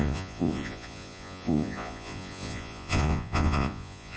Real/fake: fake